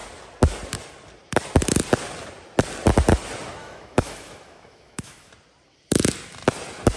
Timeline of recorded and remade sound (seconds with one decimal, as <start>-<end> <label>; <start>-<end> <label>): 0.0-3.6 recorded; 3.6-5.3 remade; 5.3-7.0 recorded